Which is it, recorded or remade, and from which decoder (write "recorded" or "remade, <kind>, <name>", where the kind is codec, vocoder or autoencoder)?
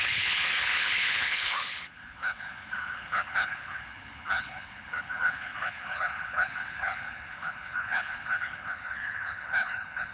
remade, codec, HILCodec